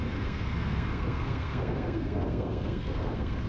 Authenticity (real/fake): fake